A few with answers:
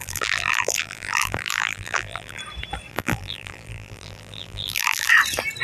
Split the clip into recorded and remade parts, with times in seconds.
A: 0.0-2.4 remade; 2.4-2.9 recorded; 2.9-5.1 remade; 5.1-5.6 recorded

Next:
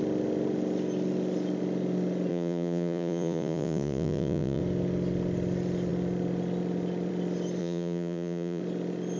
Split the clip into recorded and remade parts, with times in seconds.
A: 0.0-2.3 recorded; 2.3-4.6 remade; 4.6-7.6 recorded; 7.6-8.6 remade; 8.6-9.2 recorded